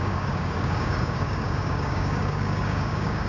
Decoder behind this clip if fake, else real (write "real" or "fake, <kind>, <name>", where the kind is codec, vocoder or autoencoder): fake, codec, DAC